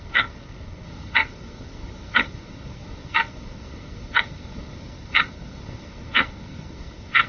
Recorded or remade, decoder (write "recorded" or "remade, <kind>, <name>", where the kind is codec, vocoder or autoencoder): remade, codec, SNAC